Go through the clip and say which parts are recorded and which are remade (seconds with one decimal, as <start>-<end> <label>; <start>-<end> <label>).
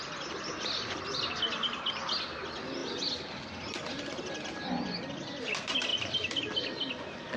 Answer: 0.0-7.4 recorded